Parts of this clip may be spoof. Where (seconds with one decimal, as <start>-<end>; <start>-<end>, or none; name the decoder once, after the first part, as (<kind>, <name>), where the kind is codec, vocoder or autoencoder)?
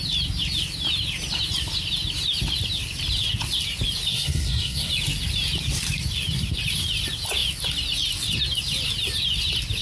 4.1-4.9 (codec, SNAC)